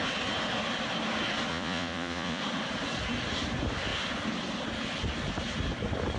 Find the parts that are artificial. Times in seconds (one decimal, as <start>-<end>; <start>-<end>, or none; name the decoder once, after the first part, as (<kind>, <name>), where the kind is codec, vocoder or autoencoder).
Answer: 1.5-2.4 (vocoder, Vocos)